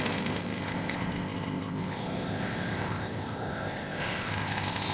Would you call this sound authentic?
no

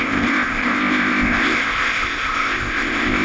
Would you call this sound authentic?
no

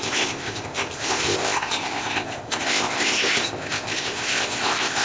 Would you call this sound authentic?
no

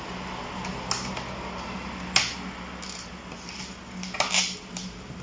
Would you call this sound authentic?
yes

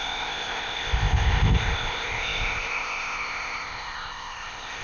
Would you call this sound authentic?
no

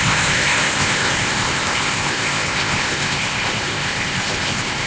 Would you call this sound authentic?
no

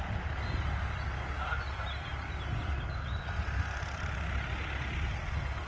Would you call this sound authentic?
yes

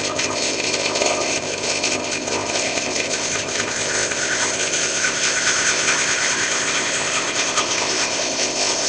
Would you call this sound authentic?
no